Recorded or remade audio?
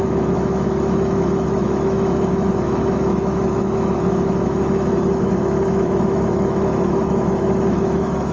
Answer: remade